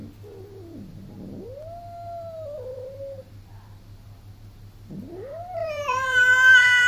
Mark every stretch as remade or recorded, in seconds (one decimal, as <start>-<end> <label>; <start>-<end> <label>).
0.0-5.6 recorded; 5.6-6.2 remade; 6.2-6.9 recorded